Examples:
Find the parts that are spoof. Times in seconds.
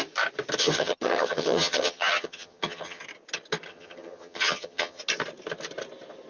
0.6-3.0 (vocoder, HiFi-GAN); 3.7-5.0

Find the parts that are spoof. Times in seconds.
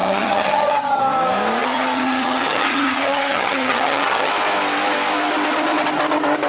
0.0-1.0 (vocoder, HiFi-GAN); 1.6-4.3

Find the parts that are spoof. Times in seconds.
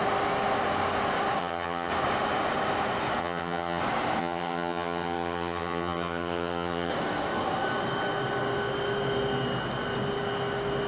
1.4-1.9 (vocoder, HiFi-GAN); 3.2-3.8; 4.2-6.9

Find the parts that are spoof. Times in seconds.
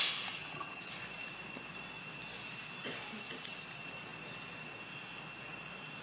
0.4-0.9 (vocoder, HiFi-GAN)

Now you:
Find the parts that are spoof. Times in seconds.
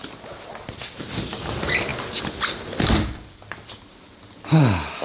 none